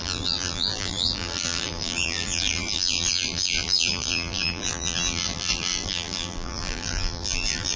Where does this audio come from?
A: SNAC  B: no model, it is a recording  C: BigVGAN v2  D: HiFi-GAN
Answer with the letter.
C